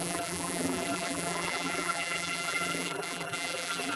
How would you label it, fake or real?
fake